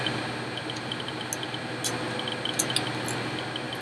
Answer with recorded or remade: recorded